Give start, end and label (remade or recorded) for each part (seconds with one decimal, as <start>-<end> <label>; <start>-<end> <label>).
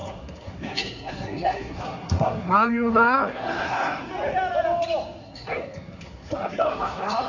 0.0-4.0 remade; 4.0-5.2 recorded; 5.2-7.3 remade